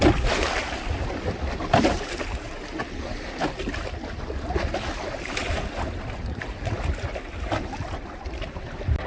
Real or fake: real